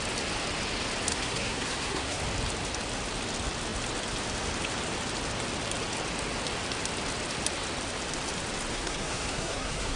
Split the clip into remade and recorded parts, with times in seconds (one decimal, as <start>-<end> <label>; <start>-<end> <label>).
0.0-1.1 recorded; 1.1-2.2 remade; 2.2-8.7 recorded; 8.7-10.0 remade